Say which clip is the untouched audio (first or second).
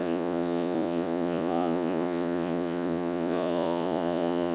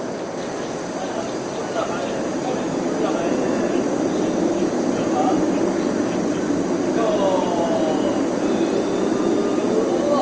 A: second